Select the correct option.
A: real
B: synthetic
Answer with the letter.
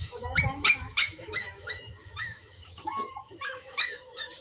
B